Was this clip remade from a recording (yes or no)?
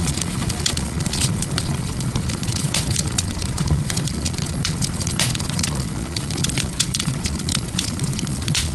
yes